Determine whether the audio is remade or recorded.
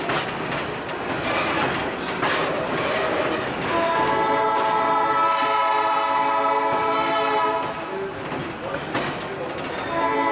recorded